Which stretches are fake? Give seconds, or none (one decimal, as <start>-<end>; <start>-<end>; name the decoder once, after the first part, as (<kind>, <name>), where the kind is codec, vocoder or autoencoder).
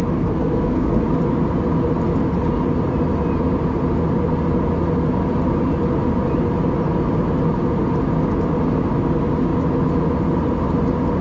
0.0-1.1 (codec, SNAC)